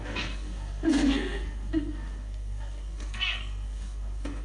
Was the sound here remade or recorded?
remade